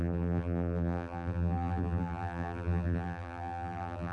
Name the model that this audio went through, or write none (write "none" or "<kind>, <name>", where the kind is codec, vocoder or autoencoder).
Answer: vocoder, BigVGAN v2